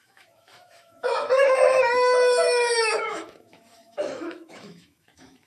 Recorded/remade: remade